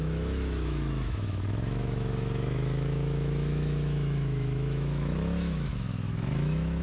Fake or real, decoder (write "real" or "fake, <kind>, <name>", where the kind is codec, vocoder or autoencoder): fake, autoencoder, DAC-VAE